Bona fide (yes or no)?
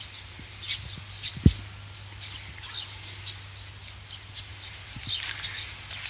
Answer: yes